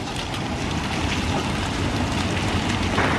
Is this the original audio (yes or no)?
yes